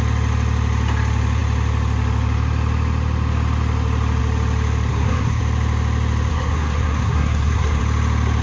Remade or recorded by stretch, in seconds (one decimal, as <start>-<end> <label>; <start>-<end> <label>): 0.0-4.9 recorded; 4.9-5.4 remade; 5.4-6.3 recorded; 6.3-7.8 remade; 7.8-8.4 recorded